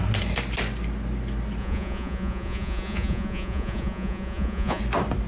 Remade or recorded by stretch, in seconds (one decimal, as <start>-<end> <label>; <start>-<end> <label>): 0.0-1.6 recorded; 1.6-4.8 remade; 4.8-5.3 recorded